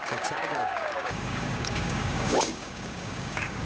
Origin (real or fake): fake